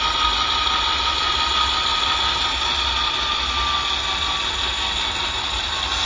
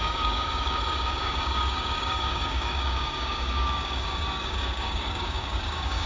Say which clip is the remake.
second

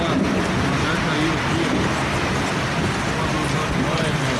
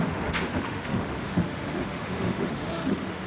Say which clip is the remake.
second